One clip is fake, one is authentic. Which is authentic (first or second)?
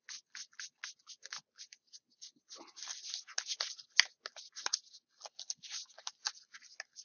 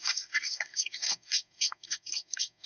first